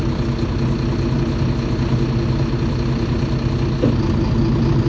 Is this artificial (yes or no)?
no